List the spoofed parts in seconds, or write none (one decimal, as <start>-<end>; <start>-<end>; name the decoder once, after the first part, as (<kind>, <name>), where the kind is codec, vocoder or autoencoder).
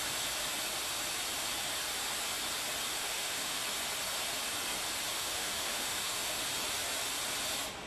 2.9-3.6 (autoencoder, DAC-VAE); 5.1-6.4